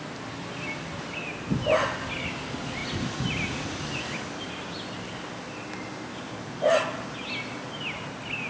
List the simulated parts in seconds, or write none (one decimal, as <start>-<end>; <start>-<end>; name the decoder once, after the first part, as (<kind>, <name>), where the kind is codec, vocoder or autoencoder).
none